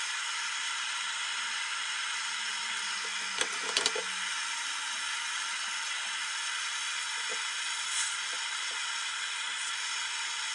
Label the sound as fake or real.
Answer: real